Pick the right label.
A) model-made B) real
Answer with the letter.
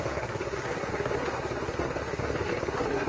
A